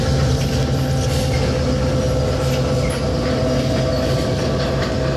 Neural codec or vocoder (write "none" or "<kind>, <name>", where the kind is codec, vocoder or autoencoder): none